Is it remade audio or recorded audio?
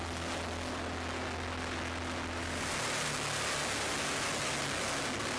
recorded